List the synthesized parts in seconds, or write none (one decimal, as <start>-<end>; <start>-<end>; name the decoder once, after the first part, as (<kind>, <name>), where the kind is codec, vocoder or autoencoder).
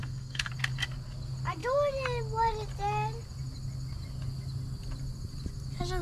0.0-0.5 (codec, SNAC)